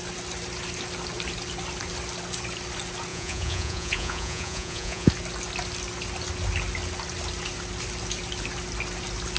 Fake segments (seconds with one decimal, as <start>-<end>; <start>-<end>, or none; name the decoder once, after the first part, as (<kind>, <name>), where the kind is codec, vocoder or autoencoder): 3.1-5.1 (vocoder, Vocos)